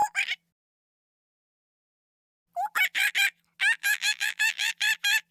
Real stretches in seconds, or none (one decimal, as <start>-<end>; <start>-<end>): 0.0-3.8; 4.7-5.3